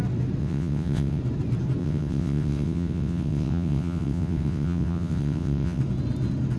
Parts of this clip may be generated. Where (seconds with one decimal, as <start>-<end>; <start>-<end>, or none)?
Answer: 0.4-1.2; 1.8-5.8